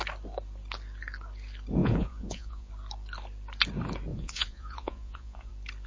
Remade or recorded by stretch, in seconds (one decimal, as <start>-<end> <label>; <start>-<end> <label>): 0.0-1.8 recorded; 1.8-2.7 remade; 2.7-4.1 recorded; 4.1-5.5 remade; 5.5-5.9 recorded